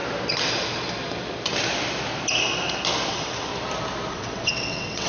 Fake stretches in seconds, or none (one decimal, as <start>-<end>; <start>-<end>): 3.1-3.5; 4.1-5.1